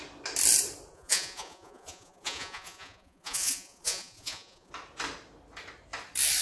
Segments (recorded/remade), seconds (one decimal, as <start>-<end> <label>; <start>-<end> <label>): 0.0-0.9 recorded; 0.9-4.7 remade; 4.7-6.4 recorded